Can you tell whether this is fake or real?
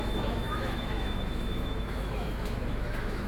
fake